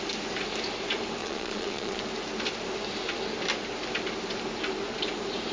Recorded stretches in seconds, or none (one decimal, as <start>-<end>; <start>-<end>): 0.0-1.2; 2.0-5.5